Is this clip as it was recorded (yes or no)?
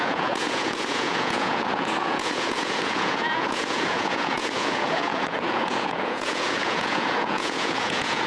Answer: no